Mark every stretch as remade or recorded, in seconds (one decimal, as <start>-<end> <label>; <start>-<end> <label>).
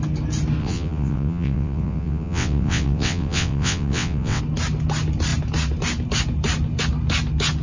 0.0-0.6 recorded; 0.6-4.4 remade; 4.4-7.6 recorded